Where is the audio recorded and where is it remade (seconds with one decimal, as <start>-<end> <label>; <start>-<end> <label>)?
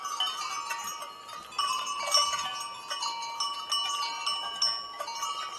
0.0-5.6 recorded